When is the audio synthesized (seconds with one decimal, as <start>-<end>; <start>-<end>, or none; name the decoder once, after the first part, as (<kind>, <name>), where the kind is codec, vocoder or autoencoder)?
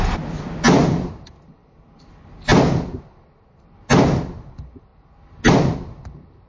none